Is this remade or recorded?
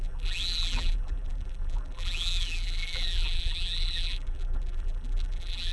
remade